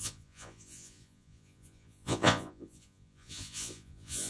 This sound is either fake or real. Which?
fake